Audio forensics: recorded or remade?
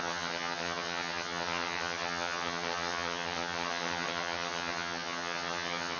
remade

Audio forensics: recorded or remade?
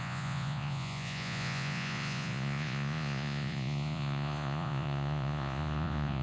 remade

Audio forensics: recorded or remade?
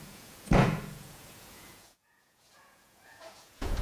remade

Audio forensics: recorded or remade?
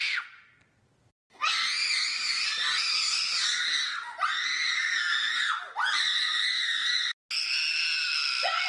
recorded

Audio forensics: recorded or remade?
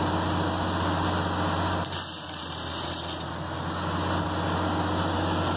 recorded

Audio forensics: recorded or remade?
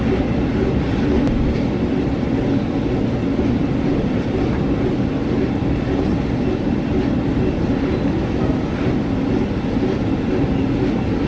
recorded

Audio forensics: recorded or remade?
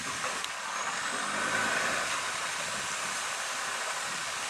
recorded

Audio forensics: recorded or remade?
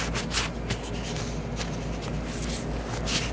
recorded